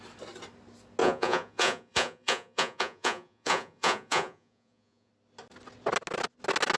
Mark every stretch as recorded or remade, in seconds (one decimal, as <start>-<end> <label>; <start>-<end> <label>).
0.0-1.0 recorded; 1.0-5.1 remade; 5.1-6.8 recorded